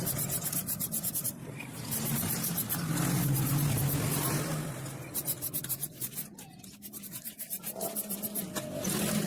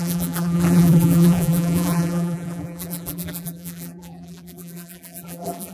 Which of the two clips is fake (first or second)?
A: second